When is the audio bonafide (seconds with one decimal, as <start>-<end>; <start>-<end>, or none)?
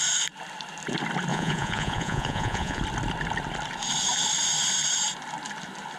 0.0-1.3; 2.8-6.0